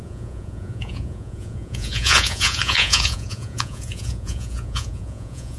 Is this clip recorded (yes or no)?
no